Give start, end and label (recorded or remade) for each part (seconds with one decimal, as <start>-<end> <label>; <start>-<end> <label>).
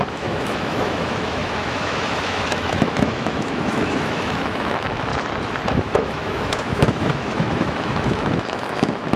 0.0-5.1 remade; 5.1-5.8 recorded; 5.8-9.2 remade